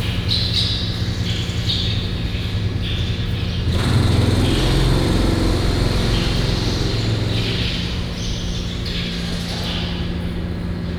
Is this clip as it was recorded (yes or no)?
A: yes